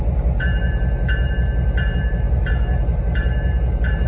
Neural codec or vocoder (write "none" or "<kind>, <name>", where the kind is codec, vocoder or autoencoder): vocoder, BigVGAN v2